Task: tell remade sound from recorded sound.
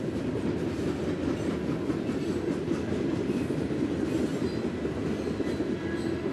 recorded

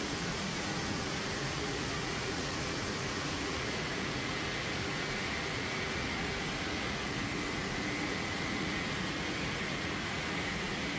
remade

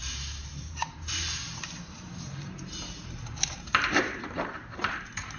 remade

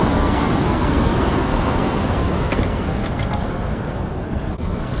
remade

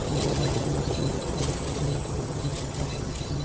remade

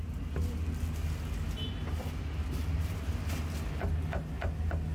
recorded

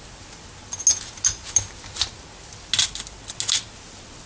recorded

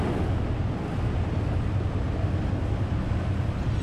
recorded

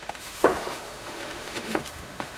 remade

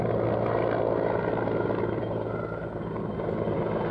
recorded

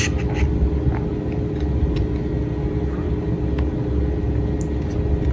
recorded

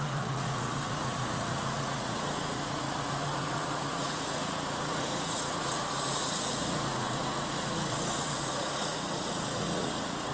remade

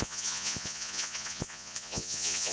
remade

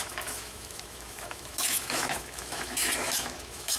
remade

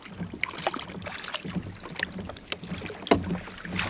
recorded